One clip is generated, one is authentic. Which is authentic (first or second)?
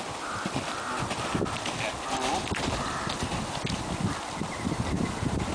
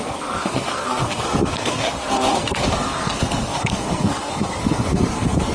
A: first